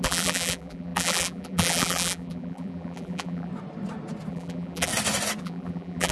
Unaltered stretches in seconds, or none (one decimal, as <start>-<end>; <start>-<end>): 3.5-4.3; 4.9-5.4

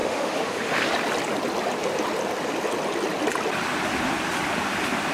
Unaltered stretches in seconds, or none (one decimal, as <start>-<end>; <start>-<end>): 0.9-5.1

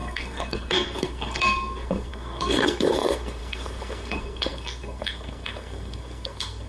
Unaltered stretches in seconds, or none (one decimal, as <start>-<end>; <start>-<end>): none